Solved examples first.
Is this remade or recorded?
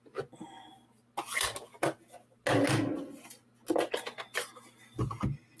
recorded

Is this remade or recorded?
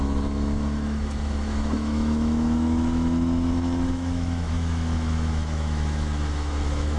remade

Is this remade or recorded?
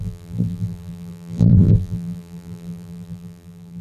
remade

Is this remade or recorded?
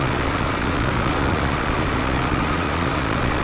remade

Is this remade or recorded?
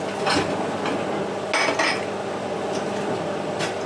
recorded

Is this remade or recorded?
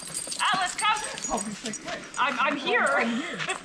recorded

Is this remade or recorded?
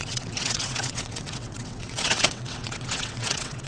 remade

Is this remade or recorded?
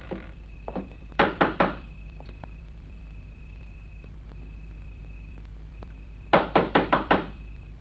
remade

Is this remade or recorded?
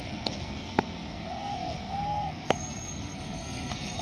remade